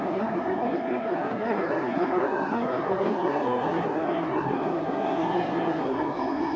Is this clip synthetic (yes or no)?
yes